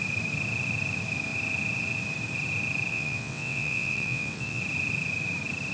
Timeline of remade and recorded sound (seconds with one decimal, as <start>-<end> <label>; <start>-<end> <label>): 0.0-2.9 recorded; 2.9-4.6 remade; 4.6-5.7 recorded